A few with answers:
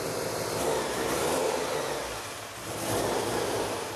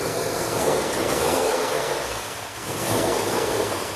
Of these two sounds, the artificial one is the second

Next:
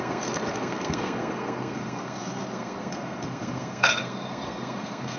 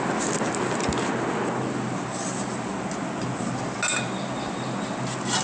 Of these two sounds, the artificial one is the first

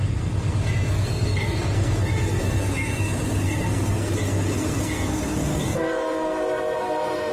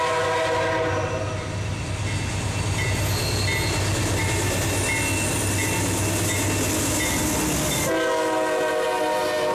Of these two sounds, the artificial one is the first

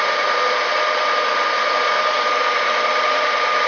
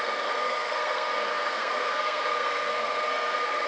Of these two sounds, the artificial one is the second